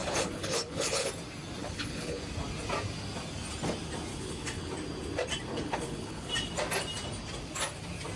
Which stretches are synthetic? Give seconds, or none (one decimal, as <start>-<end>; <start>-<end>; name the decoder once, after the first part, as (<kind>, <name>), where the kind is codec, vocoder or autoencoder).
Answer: 0.0-1.1 (codec, HILCodec); 1.6-2.2; 4.1-4.7; 5.5-6.3